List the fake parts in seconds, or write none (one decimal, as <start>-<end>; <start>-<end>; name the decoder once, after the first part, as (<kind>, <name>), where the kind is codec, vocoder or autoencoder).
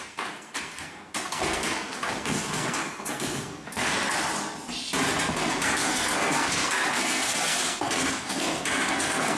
0.0-4.0 (codec, SNAC); 5.3-9.4